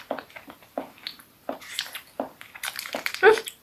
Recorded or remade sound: recorded